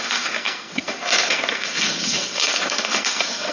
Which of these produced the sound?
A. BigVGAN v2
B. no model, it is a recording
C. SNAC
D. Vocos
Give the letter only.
C